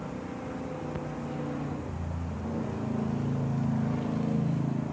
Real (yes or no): yes